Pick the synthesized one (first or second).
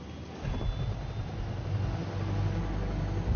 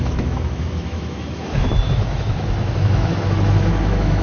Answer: second